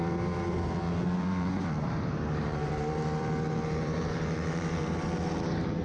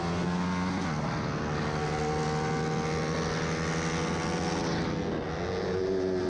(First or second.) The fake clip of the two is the first